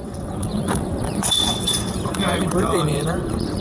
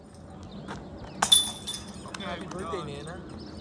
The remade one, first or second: first